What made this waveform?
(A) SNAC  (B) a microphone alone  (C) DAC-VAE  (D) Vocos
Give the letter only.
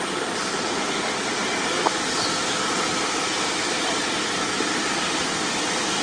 B